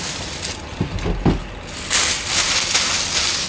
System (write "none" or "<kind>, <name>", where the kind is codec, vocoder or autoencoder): none